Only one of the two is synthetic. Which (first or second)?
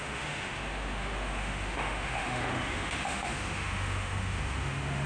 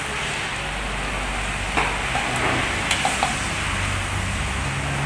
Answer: first